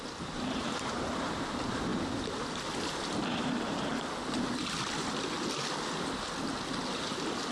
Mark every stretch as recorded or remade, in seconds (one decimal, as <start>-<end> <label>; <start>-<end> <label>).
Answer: 0.0-1.9 remade; 1.9-2.8 recorded; 2.8-3.9 remade; 3.9-7.5 recorded